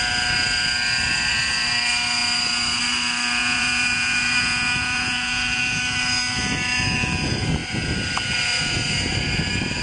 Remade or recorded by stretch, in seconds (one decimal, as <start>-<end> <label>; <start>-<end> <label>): 0.0-3.4 recorded; 3.4-5.8 remade; 5.8-9.8 recorded